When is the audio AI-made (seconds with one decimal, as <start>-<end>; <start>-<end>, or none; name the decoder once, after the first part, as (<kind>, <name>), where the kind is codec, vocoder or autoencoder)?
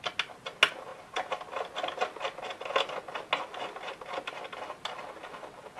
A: none